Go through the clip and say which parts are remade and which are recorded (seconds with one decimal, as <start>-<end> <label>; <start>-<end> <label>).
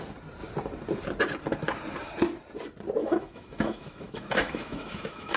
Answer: 0.0-3.0 recorded; 3.0-5.4 remade